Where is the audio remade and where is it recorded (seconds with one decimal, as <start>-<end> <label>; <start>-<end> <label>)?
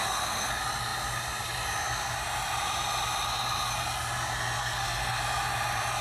0.0-0.5 remade; 0.5-4.6 recorded; 4.6-5.2 remade; 5.2-6.0 recorded